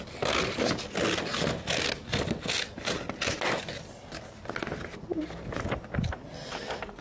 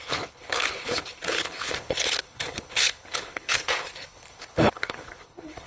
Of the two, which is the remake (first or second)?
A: second